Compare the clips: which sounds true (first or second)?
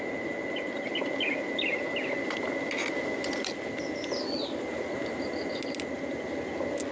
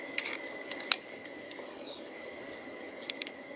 first